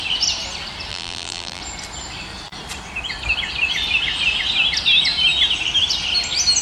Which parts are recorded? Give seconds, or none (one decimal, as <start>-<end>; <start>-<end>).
0.0-0.9; 1.6-6.6